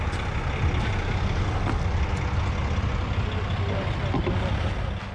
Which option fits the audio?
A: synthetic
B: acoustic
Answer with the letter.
B